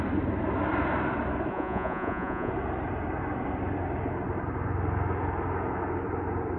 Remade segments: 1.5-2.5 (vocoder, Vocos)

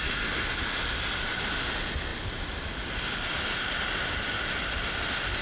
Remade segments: none

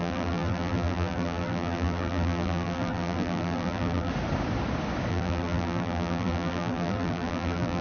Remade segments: 0.0-4.1 (vocoder, BigVGAN v2); 5.1-7.8

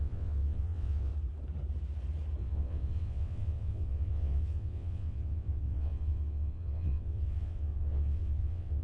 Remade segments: 0.0-1.1 (vocoder, WaveNeXt); 2.4-8.8

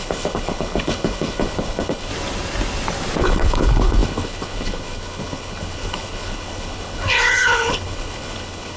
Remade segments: 0.0-2.1 (codec, HILCodec); 3.2-8.8

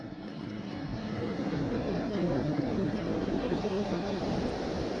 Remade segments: 0.0-4.2 (codec, SNAC)

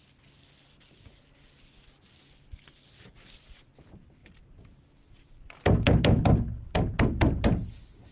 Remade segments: none

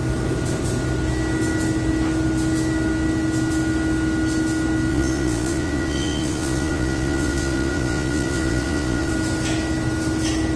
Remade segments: 4.9-9.1 (vocoder, Vocos)